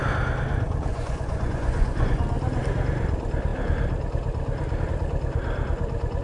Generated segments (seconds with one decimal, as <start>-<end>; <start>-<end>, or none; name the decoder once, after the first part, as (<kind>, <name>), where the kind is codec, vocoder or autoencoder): 0.9-2.2 (vocoder, Vocos)